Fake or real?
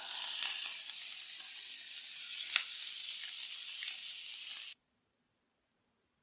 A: real